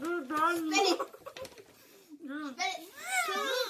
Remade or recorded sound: recorded